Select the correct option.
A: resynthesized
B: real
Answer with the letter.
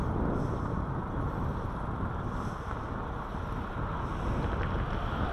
B